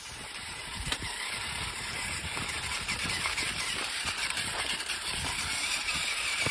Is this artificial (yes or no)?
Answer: yes